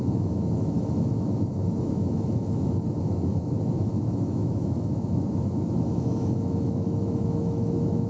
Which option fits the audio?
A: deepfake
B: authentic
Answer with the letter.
A